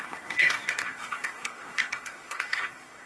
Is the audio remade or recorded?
remade